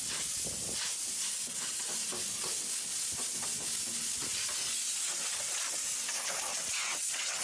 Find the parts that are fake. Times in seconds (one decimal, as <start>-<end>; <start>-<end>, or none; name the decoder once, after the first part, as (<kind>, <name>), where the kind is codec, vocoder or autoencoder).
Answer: 6.5-7.4 (vocoder, WaveNeXt)